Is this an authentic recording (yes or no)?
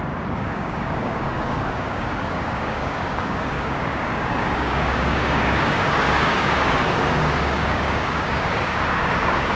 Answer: no